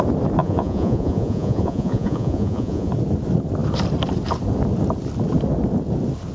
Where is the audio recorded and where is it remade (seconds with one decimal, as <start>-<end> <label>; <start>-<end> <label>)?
0.0-0.4 recorded; 0.4-2.9 remade; 2.9-6.3 recorded